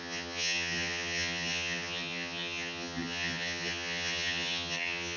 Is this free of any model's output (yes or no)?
no